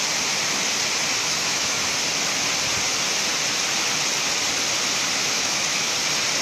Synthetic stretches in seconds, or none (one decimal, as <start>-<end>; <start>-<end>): 1.2-1.9; 5.2-5.9